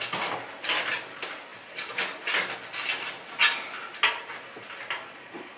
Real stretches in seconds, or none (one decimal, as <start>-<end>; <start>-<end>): 0.0-5.6